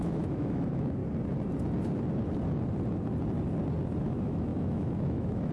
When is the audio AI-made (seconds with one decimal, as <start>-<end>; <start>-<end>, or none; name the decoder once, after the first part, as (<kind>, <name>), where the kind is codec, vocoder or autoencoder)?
0.0-1.0 (autoencoder, DAC-VAE); 4.0-5.5